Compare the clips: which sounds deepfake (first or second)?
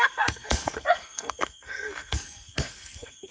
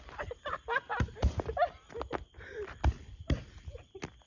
first